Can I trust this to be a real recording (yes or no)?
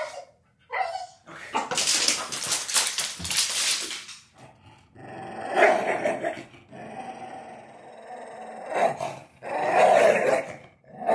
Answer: yes